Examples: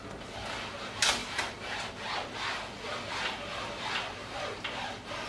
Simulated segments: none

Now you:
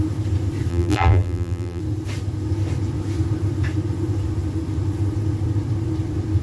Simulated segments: 0.7-1.8 (vocoder, BigVGAN v2)